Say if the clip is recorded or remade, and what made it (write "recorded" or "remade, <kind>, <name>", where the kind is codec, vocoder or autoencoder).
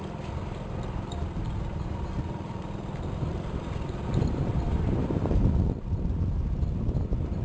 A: remade, vocoder, BigVGAN v2